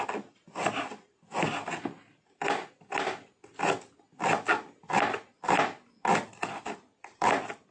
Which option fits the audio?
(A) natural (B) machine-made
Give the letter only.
A